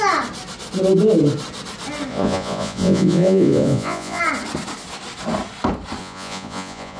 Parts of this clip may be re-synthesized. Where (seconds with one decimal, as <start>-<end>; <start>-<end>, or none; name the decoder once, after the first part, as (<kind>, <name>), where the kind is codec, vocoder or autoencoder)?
2.1-4.2 (vocoder, Vocos); 6.0-7.0